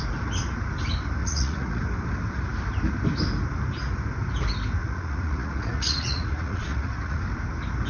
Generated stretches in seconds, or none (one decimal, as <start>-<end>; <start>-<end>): 1.2-1.8; 4.8-7.2